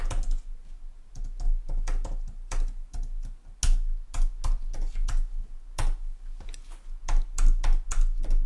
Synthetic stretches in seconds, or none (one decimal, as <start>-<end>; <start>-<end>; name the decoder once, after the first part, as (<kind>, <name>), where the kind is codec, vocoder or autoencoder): none